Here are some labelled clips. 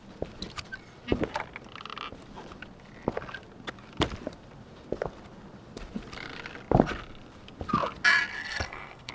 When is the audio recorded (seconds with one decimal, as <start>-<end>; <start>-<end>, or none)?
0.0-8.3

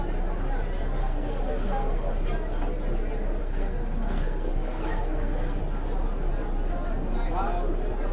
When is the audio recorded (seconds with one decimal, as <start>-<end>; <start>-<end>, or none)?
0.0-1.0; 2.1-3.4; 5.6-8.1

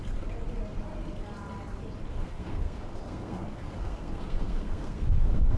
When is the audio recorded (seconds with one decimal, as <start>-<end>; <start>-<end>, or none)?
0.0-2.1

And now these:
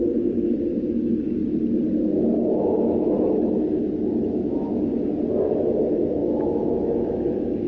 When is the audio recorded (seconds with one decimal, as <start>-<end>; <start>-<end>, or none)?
1.4-2.6; 4.9-5.4